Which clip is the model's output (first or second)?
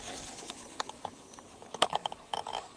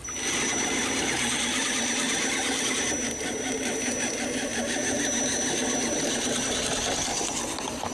first